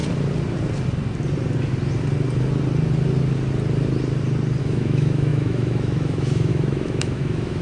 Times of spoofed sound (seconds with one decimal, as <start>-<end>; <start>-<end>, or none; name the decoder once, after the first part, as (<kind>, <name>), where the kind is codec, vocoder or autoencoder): 4.6-7.6 (autoencoder, DAC-VAE)

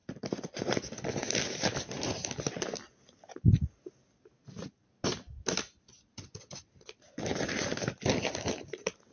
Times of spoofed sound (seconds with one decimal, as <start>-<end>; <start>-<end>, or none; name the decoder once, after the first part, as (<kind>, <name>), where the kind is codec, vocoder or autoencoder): none

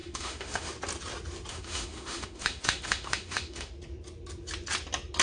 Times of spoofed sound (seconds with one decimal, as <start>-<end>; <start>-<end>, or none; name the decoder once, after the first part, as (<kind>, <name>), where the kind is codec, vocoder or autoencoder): 0.0-0.7 (autoencoder, DAC-VAE); 1.5-3.7

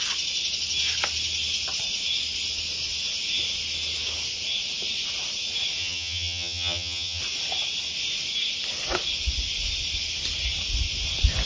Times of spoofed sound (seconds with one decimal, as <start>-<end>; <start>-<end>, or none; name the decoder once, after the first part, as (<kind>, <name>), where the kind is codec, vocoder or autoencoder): 5.8-7.2 (vocoder, HiFi-GAN)

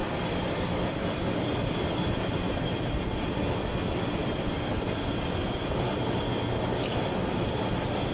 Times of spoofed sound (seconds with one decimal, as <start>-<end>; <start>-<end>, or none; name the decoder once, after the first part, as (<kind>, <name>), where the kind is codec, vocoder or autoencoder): 0.0-3.4 (vocoder, BigVGAN v2); 4.2-4.8

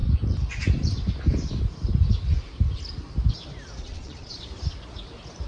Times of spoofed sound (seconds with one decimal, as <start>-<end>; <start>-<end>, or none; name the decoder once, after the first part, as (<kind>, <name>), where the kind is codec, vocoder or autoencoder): 3.8-4.4 (vocoder, Vocos)